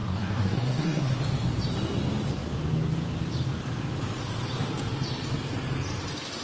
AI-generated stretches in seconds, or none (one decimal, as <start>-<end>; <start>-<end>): 0.0-1.2